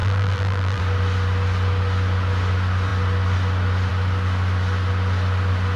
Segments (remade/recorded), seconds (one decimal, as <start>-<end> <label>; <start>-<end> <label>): 0.0-0.8 remade; 0.8-5.8 recorded